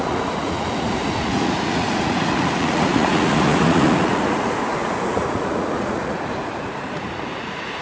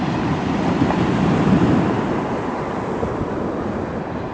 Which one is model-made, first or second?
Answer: first